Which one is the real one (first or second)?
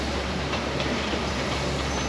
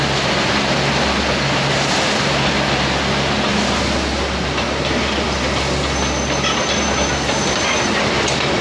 second